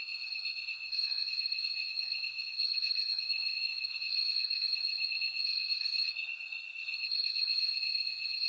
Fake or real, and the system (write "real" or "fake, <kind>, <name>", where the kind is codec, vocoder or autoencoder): fake, codec, SNAC